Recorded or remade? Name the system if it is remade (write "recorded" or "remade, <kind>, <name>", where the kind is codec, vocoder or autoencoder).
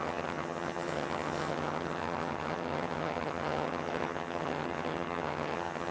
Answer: remade, vocoder, HiFi-GAN